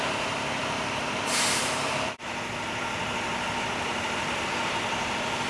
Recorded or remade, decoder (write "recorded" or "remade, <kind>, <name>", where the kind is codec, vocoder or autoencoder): remade, vocoder, BigVGAN v2